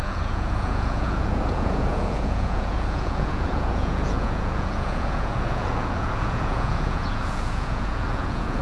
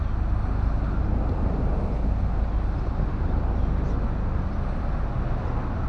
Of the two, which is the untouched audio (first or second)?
second